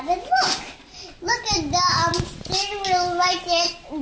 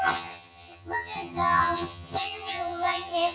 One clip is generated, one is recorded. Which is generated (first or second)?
second